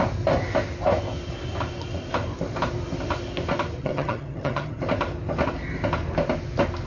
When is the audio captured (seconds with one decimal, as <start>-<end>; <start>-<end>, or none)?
0.0-3.8; 4.8-6.9